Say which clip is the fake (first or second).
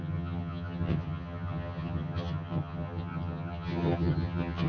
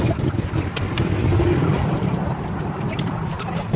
first